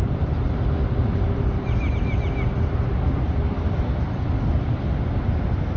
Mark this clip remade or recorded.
recorded